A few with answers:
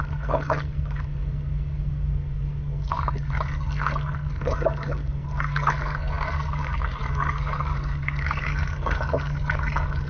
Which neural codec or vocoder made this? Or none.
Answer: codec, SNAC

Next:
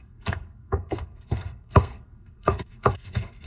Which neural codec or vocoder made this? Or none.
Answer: codec, SNAC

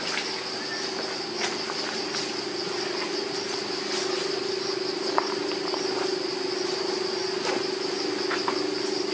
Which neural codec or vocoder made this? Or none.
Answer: none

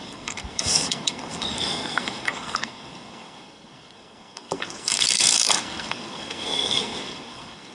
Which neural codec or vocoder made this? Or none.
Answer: codec, SNAC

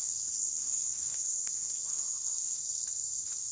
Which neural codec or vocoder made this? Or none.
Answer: codec, SNAC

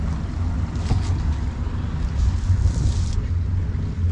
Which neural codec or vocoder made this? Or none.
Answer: none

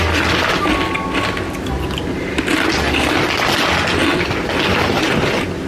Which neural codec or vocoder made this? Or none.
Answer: none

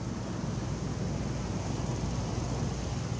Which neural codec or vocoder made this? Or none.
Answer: none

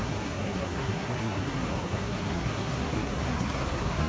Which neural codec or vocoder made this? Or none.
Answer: codec, SNAC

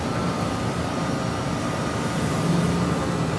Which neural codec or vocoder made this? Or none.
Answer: none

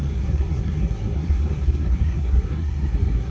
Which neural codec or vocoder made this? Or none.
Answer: codec, SNAC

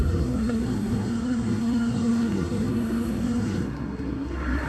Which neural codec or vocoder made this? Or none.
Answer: codec, SNAC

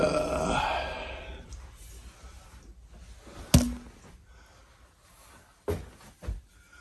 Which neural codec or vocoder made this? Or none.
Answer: none